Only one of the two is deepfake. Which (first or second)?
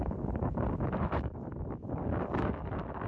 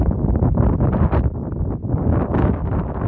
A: first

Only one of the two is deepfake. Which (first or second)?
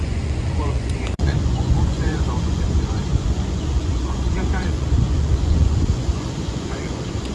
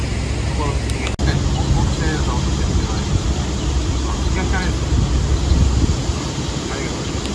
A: first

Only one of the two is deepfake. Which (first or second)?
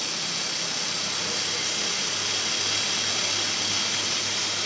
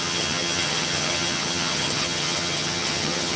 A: second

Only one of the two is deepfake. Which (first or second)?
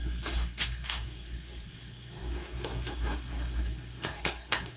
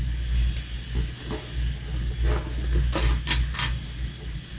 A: first